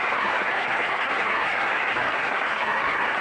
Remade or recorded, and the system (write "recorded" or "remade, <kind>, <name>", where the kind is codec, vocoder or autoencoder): remade, codec, SNAC